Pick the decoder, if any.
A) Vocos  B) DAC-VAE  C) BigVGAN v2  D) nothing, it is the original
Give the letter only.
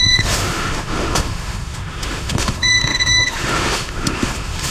B